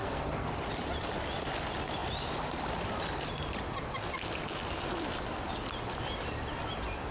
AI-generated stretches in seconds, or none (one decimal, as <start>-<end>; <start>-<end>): 0.0-0.5